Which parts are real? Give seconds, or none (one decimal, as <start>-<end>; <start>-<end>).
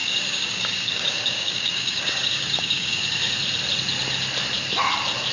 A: 3.2-5.3